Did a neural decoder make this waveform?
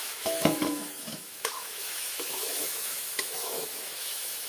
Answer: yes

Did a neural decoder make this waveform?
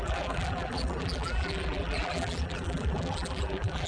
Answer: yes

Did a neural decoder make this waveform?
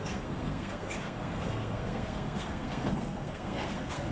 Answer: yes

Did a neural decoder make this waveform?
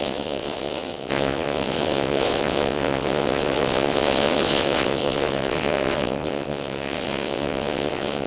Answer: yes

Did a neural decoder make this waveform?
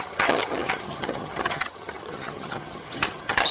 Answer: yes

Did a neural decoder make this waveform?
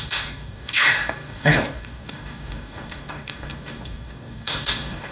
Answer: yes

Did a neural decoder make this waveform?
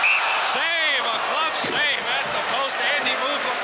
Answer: no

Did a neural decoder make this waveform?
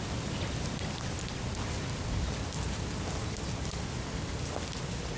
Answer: no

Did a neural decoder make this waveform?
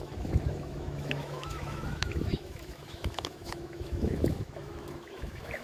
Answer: yes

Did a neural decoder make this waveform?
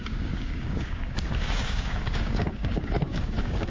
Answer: yes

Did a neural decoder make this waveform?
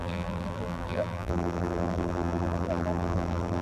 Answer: yes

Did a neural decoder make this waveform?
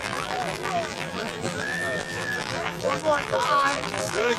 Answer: yes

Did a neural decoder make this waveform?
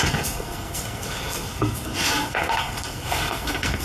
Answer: yes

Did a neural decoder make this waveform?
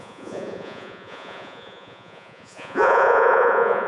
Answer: yes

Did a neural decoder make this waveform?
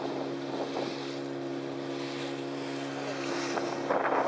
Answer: no